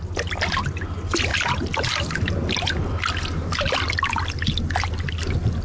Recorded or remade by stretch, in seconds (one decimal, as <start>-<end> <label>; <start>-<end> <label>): 0.0-5.6 recorded